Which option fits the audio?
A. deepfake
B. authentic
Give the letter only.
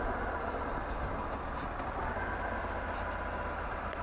B